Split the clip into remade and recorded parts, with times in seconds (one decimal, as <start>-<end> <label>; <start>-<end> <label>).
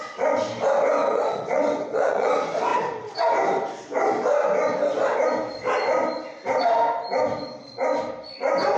0.0-1.0 recorded; 1.0-2.3 remade; 2.3-8.8 recorded